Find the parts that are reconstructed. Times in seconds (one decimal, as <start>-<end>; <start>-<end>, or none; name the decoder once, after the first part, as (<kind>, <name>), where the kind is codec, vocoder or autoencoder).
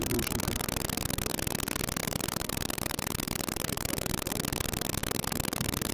2.0-4.3 (vocoder, BigVGAN v2)